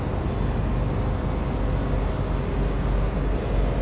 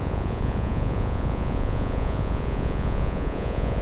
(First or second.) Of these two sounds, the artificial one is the second